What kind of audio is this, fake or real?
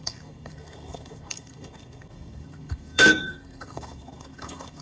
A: fake